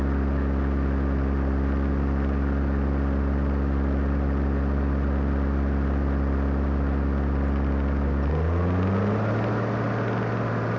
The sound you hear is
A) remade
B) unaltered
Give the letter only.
B